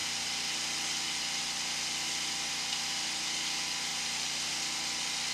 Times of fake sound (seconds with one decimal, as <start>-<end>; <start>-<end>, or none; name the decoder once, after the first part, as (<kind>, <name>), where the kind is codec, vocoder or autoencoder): 0.0-1.4 (vocoder, BigVGAN v2); 3.9-4.5